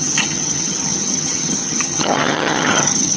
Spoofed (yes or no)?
yes